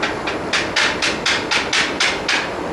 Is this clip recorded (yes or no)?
yes